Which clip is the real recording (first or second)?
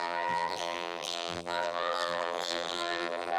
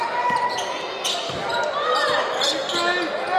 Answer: second